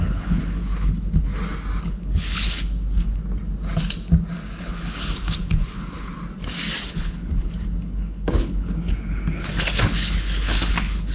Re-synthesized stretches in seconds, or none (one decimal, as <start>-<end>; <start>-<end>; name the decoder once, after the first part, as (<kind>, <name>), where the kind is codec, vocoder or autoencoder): 0.0-1.3 (codec, HILCodec); 1.8-3.2; 4.6-6.1; 6.8-11.1